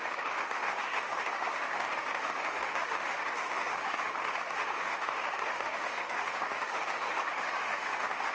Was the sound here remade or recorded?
remade